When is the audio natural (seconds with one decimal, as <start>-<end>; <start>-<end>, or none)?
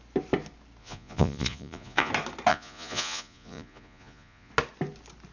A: 0.0-0.8; 2.1-2.5; 4.5-5.3